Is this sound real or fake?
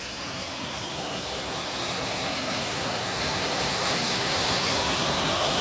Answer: fake